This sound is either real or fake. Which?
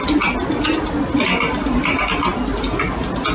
real